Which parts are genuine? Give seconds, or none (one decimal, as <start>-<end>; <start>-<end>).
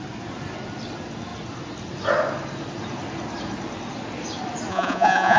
0.0-4.7